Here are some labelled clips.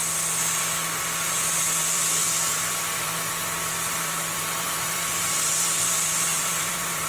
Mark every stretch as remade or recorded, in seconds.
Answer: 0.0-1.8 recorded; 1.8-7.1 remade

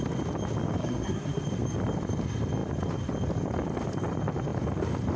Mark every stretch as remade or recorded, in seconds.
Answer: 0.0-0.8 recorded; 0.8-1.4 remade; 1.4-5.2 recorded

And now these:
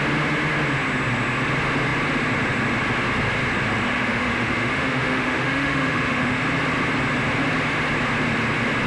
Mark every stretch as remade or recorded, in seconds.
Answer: 0.0-3.9 recorded; 3.9-6.4 remade; 6.4-8.9 recorded

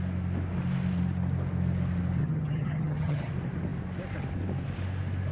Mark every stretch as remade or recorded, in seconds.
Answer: 0.0-2.2 recorded; 2.2-3.3 remade; 3.3-5.3 recorded